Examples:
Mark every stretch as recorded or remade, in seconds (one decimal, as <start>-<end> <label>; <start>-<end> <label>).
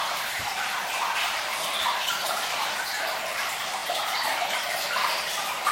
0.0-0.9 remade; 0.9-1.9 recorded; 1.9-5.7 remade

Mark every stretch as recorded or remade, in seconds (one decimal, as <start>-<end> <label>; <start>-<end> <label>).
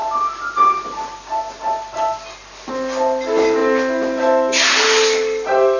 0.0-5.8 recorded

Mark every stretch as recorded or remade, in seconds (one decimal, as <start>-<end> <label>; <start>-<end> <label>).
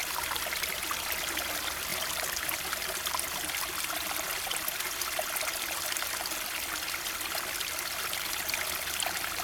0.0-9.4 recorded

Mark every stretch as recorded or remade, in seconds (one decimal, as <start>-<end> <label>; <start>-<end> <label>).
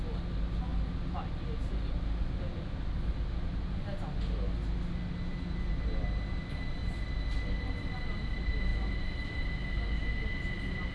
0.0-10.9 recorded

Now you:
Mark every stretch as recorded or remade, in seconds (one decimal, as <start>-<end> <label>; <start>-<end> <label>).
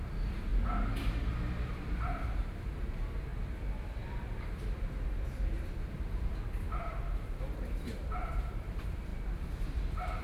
0.0-0.5 remade; 0.5-1.5 recorded; 1.5-3.3 remade; 3.3-4.4 recorded; 4.4-9.1 remade; 9.1-9.6 recorded; 9.6-10.2 remade